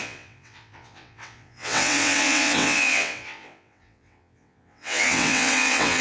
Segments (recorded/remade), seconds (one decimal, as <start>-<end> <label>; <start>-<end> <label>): 0.0-6.0 remade